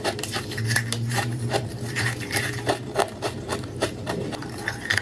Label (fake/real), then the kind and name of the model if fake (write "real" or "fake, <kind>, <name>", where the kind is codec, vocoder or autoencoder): fake, vocoder, BigVGAN v2